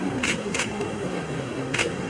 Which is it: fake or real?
fake